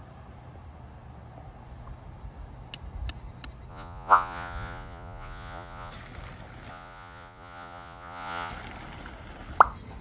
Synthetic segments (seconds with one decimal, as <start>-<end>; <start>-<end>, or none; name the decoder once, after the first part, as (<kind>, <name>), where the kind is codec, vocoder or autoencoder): 3.7-5.9 (vocoder, Vocos); 6.7-8.5